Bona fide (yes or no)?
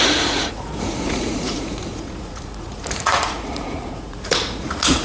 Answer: no